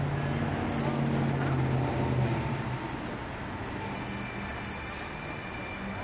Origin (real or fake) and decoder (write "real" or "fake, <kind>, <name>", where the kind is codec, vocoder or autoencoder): real